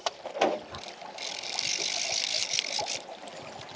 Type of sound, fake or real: real